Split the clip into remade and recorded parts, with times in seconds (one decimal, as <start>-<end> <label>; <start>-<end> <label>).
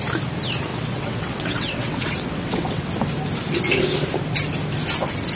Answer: 0.0-0.7 recorded; 0.7-2.9 remade; 2.9-5.4 recorded